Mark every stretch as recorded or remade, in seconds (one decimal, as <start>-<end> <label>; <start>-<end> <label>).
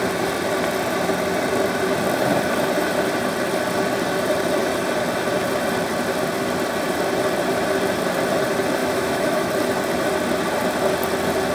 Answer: 0.0-8.8 recorded; 8.8-9.5 remade; 9.5-11.5 recorded